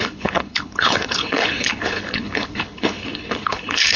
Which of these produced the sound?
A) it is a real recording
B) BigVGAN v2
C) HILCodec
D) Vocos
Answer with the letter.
C